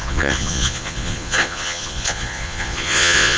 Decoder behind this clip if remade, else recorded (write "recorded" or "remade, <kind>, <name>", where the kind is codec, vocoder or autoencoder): remade, vocoder, Vocos